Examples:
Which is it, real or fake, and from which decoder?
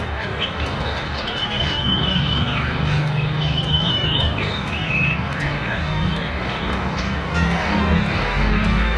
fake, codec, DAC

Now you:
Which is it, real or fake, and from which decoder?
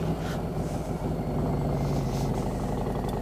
real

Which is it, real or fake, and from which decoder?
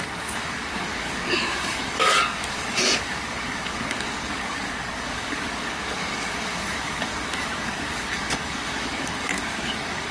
fake, codec, DAC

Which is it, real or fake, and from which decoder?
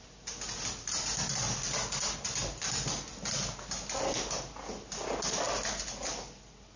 real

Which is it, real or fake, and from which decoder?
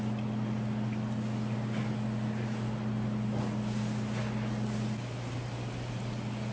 real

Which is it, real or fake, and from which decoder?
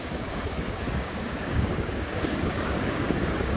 fake, codec, DAC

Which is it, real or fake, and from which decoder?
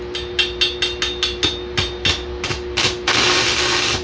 real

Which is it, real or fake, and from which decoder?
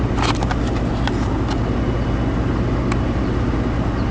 real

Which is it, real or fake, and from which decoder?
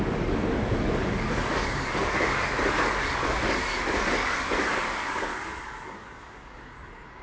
fake, codec, DAC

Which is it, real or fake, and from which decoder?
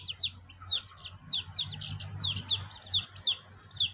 real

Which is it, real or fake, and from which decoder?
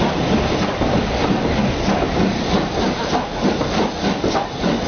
real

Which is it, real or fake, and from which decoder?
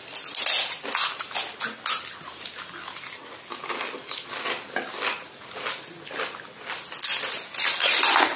real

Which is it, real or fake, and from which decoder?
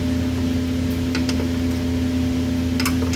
real